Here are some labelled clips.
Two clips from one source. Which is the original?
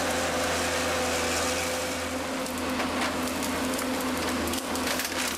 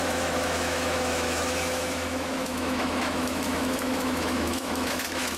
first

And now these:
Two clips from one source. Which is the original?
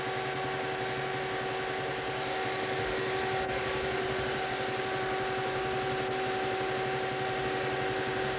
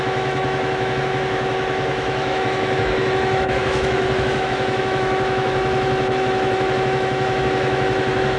first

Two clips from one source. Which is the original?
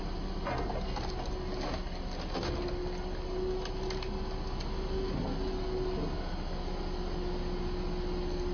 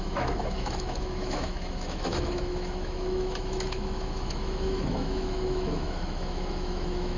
first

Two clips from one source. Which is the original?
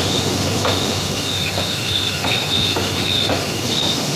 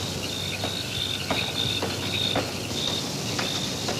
second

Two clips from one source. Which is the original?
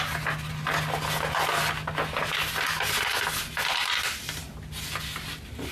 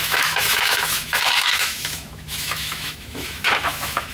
first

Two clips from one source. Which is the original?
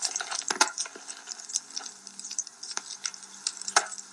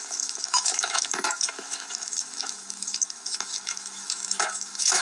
first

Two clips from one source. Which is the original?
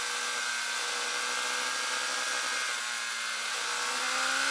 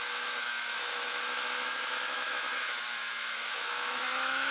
first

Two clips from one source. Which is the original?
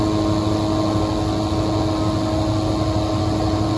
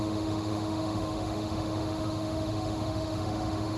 first